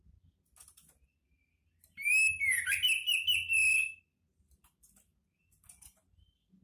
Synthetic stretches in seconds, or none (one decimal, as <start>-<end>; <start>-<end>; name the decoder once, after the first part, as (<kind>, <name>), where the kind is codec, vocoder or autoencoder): none